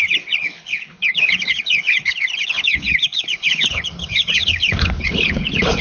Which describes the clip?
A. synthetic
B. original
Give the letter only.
A